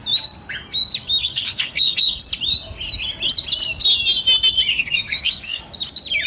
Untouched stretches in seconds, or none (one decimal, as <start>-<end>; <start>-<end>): 0.0-1.2; 2.2-4.7; 5.6-6.3